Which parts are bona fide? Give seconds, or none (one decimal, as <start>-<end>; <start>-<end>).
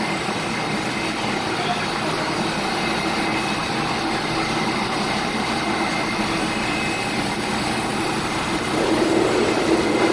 0.0-7.9; 9.1-10.1